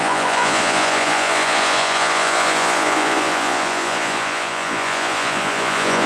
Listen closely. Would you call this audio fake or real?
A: fake